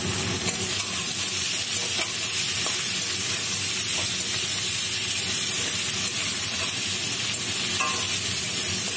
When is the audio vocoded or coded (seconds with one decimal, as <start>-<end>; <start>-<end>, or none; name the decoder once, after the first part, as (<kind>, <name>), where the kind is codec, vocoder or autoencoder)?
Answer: none